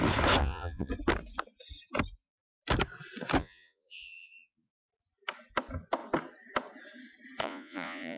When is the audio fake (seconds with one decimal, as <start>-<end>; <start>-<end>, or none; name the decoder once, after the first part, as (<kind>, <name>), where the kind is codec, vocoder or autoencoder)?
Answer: 0.4-0.9 (vocoder, Vocos); 3.4-4.9; 7.4-8.2